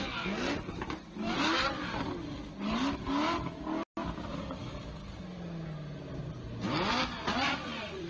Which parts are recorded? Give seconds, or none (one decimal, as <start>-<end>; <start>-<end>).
0.0-7.2